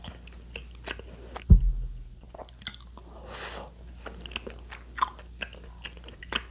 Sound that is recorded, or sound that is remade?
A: recorded